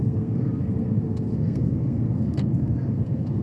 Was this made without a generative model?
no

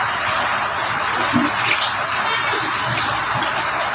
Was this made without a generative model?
yes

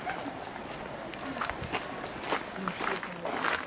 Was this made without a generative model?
yes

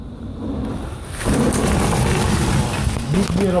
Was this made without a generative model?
yes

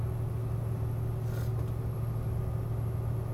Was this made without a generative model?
yes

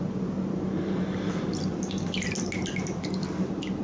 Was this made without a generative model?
yes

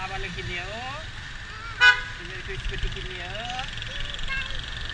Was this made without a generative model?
yes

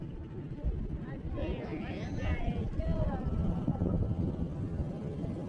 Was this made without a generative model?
yes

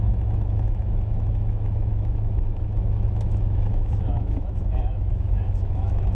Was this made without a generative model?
no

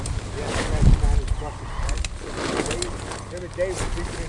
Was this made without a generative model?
yes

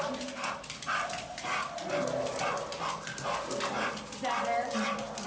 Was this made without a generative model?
yes